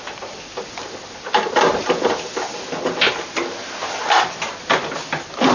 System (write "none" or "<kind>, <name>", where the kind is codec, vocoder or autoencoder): none